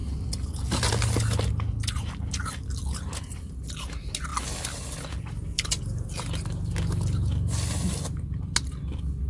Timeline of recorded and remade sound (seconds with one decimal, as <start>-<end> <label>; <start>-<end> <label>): 0.0-9.3 recorded